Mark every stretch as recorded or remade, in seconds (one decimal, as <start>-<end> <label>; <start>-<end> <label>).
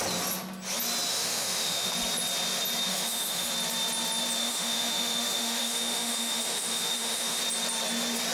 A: 0.0-1.1 recorded; 1.1-1.9 remade; 1.9-2.9 recorded; 2.9-3.5 remade; 3.5-4.4 recorded; 4.4-7.4 remade; 7.4-8.3 recorded